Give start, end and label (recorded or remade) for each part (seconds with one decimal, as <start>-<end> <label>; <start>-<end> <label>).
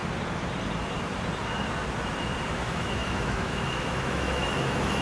0.0-2.5 recorded; 2.5-5.0 remade